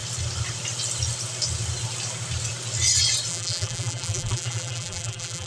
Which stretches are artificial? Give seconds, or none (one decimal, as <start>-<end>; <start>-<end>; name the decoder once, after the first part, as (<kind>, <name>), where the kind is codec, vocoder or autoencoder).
3.3-5.5 (vocoder, BigVGAN v2)